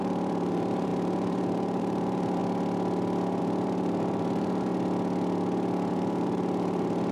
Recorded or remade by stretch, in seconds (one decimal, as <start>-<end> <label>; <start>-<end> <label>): 0.0-2.4 remade; 2.4-3.4 recorded; 3.4-4.7 remade; 4.7-5.9 recorded; 5.9-7.1 remade